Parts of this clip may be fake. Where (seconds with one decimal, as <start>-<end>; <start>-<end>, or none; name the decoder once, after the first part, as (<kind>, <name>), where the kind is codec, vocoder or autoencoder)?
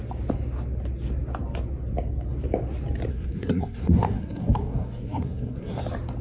3.1-5.8 (codec, SNAC)